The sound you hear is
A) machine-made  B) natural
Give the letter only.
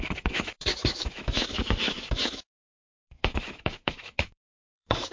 A